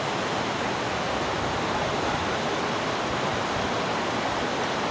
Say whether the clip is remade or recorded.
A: recorded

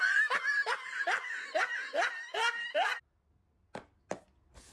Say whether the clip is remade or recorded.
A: recorded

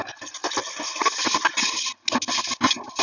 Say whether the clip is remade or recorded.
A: recorded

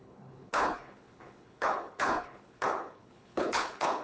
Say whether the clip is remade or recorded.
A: remade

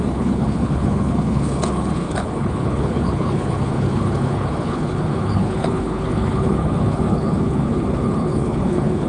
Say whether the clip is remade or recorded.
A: remade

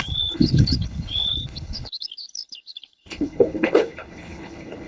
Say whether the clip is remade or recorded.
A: remade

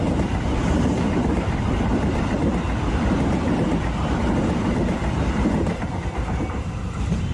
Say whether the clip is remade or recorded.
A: recorded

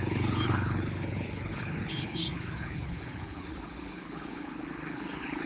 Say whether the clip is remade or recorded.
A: remade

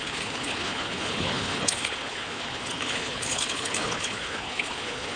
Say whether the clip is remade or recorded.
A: remade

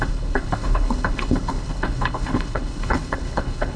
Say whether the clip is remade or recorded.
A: remade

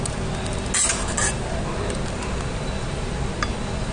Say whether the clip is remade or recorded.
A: recorded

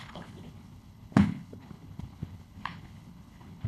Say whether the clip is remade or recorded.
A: remade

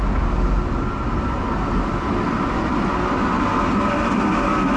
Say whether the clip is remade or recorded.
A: recorded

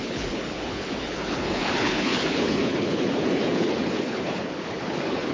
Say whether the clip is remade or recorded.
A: remade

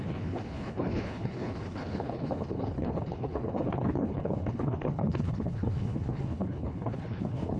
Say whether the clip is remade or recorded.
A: remade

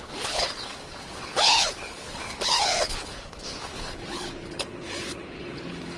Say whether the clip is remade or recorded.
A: remade